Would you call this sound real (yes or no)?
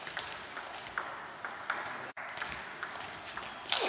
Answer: yes